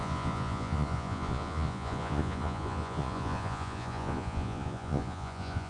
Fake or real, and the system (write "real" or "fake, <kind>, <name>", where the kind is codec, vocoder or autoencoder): fake, vocoder, Vocos